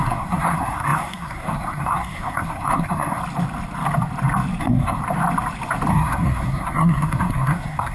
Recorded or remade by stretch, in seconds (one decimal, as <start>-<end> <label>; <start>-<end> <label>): 0.0-3.2 remade; 3.2-4.6 recorded; 4.6-5.0 remade; 5.0-5.9 recorded; 5.9-7.9 remade